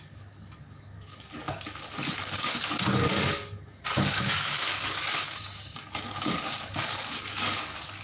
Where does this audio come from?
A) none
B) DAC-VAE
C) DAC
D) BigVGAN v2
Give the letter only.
C